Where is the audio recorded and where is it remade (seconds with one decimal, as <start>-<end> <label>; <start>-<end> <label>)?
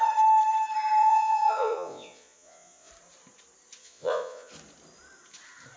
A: 0.0-1.0 recorded; 1.0-2.9 remade; 2.9-3.8 recorded; 3.8-4.5 remade; 4.5-5.8 recorded